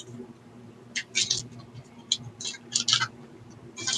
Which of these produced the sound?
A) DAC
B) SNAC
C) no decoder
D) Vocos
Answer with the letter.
C